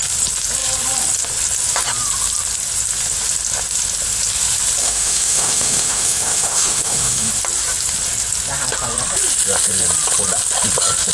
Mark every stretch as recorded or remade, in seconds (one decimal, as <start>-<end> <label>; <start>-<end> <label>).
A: 0.0-4.8 recorded; 4.8-7.3 remade; 7.3-11.1 recorded